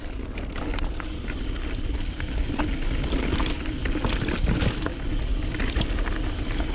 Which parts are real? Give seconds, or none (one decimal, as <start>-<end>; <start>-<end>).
0.0-0.7; 1.6-6.7